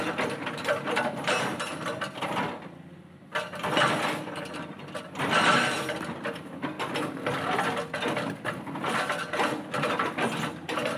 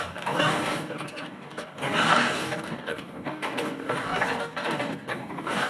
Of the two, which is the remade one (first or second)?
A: second